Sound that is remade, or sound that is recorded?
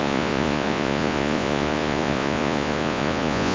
remade